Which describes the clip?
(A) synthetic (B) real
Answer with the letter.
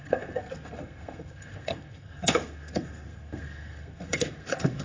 A